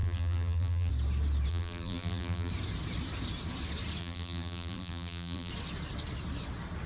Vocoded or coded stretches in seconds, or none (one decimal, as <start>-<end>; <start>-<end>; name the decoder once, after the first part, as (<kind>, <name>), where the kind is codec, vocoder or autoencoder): 0.0-0.9 (vocoder, BigVGAN v2); 1.5-2.5; 4.0-5.5